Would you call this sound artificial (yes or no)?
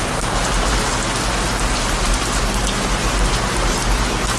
no